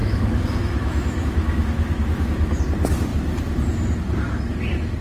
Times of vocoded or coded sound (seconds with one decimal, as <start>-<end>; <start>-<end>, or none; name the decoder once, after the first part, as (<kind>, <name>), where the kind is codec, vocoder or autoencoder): 0.0-2.6 (autoencoder, DAC-VAE)